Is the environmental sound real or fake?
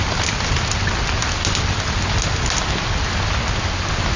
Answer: real